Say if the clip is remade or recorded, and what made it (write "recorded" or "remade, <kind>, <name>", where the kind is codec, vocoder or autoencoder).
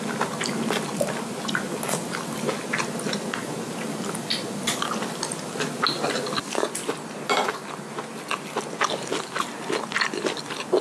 recorded